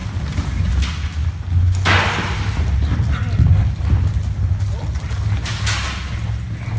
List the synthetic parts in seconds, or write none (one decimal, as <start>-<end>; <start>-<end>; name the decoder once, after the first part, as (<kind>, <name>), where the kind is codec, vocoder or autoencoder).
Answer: none